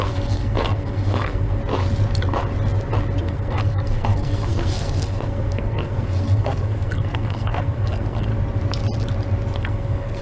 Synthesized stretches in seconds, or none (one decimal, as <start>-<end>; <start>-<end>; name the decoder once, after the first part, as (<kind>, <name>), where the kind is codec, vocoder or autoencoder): 0.0-1.6 (codec, SNAC); 3.2-8.3; 9.6-10.2